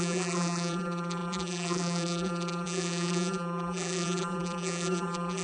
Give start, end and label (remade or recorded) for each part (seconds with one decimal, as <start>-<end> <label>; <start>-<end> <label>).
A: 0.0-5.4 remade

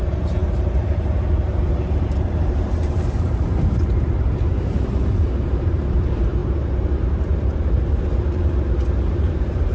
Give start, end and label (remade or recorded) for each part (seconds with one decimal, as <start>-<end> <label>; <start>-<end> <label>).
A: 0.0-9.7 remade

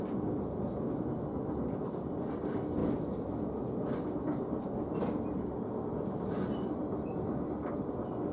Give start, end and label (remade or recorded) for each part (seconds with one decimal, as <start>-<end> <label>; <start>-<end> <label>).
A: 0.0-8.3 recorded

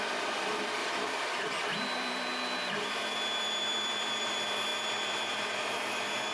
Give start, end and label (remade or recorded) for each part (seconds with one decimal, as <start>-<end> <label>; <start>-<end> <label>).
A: 0.0-2.3 remade; 2.3-3.4 recorded; 3.4-6.3 remade

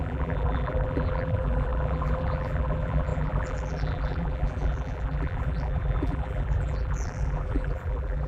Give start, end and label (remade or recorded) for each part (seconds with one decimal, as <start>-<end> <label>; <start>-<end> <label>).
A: 0.0-8.3 remade

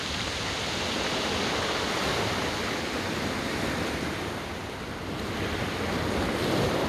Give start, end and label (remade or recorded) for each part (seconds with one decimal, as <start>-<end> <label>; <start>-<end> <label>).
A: 0.0-6.9 recorded